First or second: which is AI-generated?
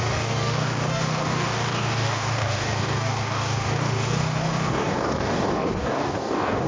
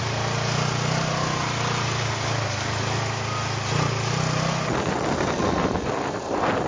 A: first